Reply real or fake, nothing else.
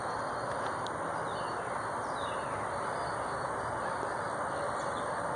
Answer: real